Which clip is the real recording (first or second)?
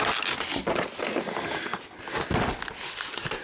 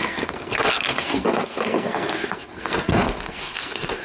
first